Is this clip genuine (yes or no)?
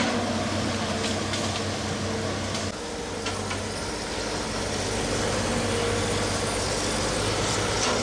yes